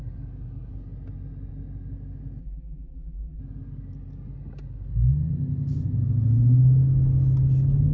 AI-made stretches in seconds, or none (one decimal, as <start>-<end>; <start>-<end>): 2.4-3.4